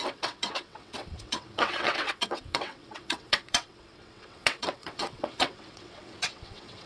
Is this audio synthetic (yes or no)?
yes